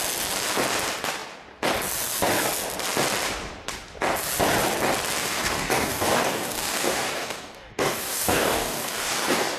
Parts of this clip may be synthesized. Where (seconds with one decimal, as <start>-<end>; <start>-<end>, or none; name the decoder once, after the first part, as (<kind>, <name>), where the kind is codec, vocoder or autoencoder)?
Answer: 5.2-9.6 (codec, DAC)